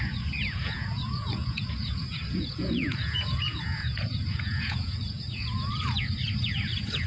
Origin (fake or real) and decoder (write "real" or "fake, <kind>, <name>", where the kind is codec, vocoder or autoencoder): fake, vocoder, Vocos